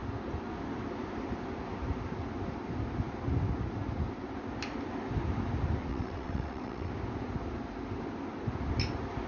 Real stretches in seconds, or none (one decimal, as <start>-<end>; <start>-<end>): 0.0-5.9; 6.9-9.3